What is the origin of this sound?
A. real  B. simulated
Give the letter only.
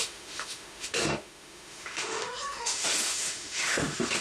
B